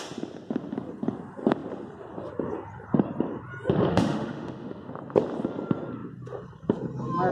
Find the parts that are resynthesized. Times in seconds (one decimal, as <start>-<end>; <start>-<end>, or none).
3.9-4.9